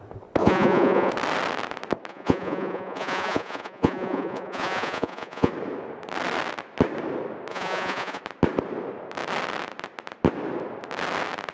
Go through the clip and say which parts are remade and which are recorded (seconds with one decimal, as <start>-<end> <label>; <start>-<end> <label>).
0.0-0.4 recorded; 0.4-1.1 remade; 1.1-2.1 recorded; 2.1-5.5 remade; 5.5-7.5 recorded; 7.5-8.2 remade; 8.2-11.5 recorded